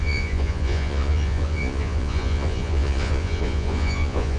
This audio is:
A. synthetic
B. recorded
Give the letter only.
A